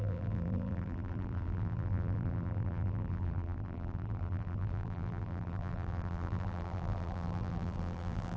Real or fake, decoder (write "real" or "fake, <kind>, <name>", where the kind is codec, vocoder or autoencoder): fake, vocoder, BigVGAN v2